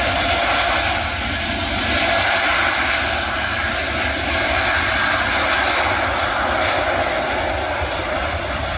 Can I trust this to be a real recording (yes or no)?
yes